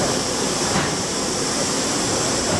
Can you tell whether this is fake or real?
fake